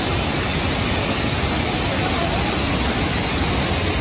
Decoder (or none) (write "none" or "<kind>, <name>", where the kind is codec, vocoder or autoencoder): none